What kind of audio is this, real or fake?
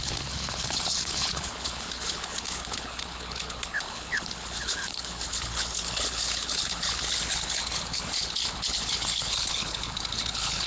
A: fake